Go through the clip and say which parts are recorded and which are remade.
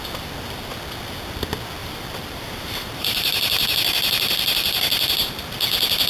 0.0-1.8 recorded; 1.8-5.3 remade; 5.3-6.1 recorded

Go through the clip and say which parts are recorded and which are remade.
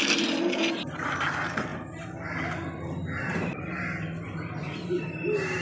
0.0-5.6 recorded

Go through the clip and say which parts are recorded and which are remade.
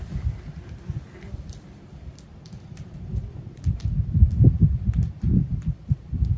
0.0-6.4 recorded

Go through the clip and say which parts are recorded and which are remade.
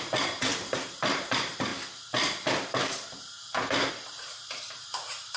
0.0-1.7 remade; 1.7-3.9 recorded; 3.9-5.4 remade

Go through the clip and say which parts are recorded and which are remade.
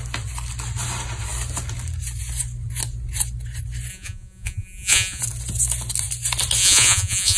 0.0-3.9 recorded; 3.9-5.2 remade; 5.2-6.6 recorded; 6.6-7.4 remade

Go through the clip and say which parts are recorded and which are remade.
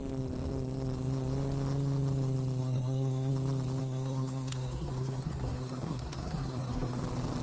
0.0-2.6 recorded; 2.6-3.3 remade; 3.3-3.8 recorded; 3.8-7.0 remade; 7.0-7.4 recorded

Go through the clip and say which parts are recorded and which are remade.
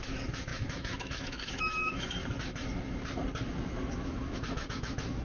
0.0-2.2 remade; 2.2-3.5 recorded; 3.5-5.2 remade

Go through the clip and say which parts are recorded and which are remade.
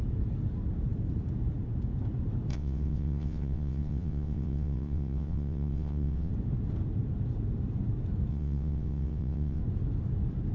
0.0-2.5 recorded; 2.5-6.3 remade; 6.3-8.3 recorded; 8.3-9.6 remade; 9.6-10.5 recorded